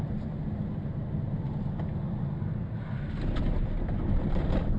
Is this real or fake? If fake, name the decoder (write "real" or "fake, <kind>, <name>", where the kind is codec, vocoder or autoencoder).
real